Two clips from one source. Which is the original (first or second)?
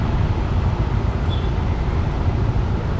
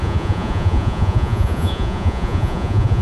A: first